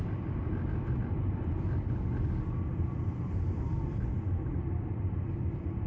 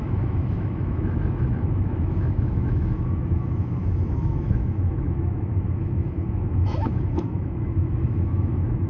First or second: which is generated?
second